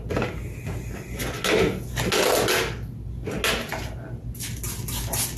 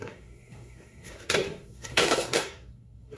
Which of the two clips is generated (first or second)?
second